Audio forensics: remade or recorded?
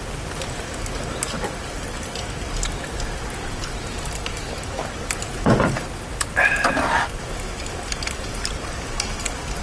recorded